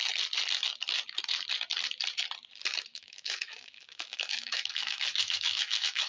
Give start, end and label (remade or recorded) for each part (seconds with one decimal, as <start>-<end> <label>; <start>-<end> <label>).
0.0-2.9 recorded; 2.9-6.1 remade